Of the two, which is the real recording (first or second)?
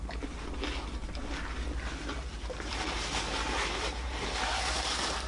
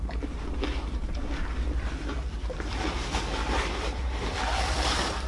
first